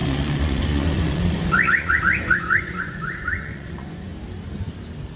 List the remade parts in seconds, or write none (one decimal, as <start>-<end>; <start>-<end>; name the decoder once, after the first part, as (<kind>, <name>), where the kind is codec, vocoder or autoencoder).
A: 0.0-4.1 (vocoder, Vocos)

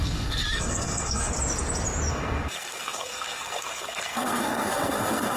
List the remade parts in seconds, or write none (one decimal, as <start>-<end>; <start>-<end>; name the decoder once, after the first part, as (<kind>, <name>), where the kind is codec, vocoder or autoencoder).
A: 0.0-1.3 (codec, SNAC); 2.1-5.4